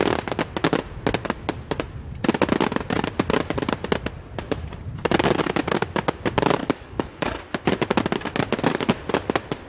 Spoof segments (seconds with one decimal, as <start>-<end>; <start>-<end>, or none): 6.6-7.4

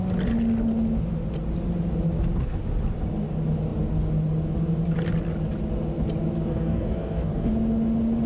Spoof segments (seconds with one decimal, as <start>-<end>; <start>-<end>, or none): 6.5-7.5

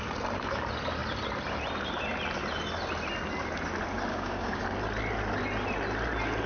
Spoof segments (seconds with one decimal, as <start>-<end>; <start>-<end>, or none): 4.1-4.6

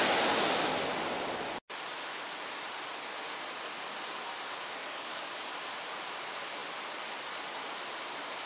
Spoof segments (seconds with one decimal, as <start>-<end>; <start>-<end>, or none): 4.8-5.5

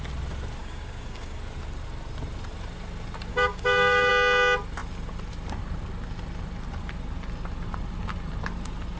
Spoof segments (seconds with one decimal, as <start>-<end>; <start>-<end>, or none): 0.6-1.4; 3.3-4.1

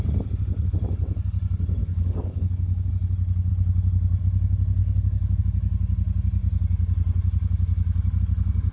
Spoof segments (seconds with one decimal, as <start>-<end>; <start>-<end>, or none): 1.8-2.9; 4.8-5.4

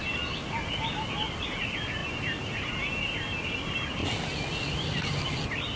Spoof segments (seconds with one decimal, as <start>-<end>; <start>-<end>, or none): none